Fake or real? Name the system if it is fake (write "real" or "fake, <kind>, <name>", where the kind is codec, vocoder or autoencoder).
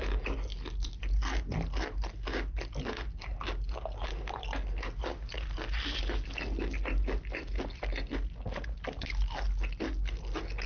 real